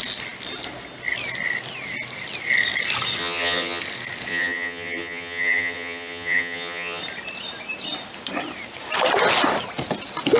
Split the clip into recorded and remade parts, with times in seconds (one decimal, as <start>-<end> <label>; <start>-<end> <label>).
0.0-3.2 recorded; 3.2-3.8 remade; 3.8-4.3 recorded; 4.3-7.0 remade; 7.0-10.4 recorded

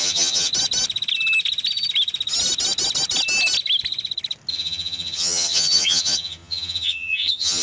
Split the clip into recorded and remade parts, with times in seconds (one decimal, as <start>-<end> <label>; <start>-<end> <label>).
0.0-0.5 remade; 0.5-4.5 recorded; 4.5-7.6 remade

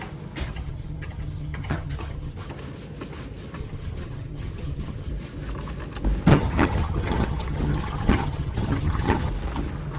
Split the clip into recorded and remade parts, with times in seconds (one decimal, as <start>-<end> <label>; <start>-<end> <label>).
0.0-0.4 recorded; 0.4-2.5 remade; 2.5-3.6 recorded; 3.6-5.1 remade; 5.1-6.3 recorded; 6.3-9.3 remade; 9.3-10.0 recorded

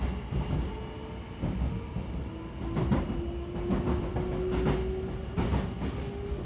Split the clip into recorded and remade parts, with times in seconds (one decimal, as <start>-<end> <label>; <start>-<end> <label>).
0.0-6.5 recorded

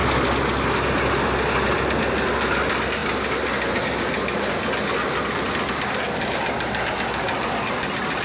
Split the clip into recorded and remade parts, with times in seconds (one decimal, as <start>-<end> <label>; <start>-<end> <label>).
0.0-8.2 recorded

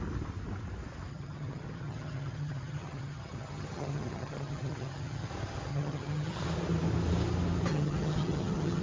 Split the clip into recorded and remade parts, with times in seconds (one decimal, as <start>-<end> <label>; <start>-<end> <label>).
0.0-1.1 recorded; 1.1-5.3 remade; 5.3-5.7 recorded; 5.7-6.4 remade; 6.4-7.7 recorded; 7.7-8.8 remade